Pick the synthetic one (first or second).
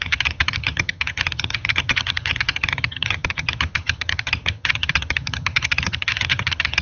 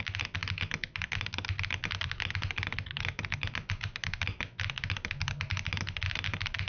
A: first